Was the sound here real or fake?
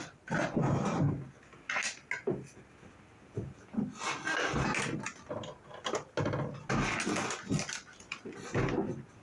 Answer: real